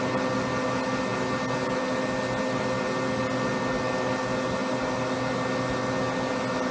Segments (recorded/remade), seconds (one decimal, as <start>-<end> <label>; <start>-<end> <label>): 0.0-6.7 recorded